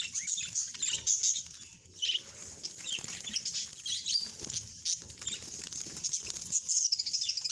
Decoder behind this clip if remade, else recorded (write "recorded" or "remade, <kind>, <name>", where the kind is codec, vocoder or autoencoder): recorded